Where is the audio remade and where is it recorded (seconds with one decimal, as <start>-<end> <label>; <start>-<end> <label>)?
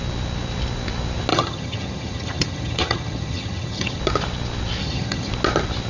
0.0-1.3 recorded; 1.3-4.0 remade; 4.0-4.8 recorded; 4.8-5.3 remade; 5.3-5.9 recorded